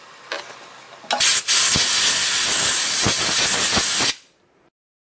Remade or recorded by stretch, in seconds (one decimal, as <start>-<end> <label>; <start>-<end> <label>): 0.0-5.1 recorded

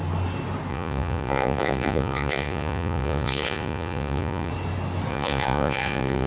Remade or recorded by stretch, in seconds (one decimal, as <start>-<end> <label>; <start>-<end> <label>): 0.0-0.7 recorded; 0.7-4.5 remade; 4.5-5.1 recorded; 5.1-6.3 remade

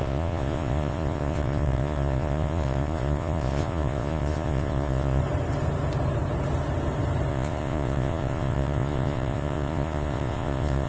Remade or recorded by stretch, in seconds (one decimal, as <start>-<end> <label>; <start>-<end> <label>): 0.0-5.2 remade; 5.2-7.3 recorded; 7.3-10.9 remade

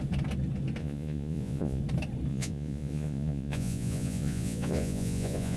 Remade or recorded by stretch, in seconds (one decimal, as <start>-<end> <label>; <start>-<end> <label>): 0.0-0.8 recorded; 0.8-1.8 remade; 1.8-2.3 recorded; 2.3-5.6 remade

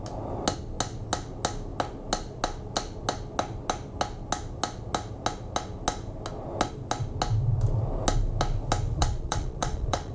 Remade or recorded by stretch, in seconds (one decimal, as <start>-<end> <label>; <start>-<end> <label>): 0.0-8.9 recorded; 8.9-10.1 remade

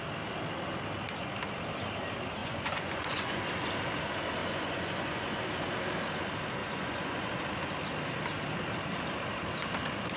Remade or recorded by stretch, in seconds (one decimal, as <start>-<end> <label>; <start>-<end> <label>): 0.0-2.4 recorded; 2.4-3.4 remade; 3.4-4.4 recorded; 4.4-5.4 remade; 5.4-6.6 recorded; 6.6-7.3 remade; 7.3-10.2 recorded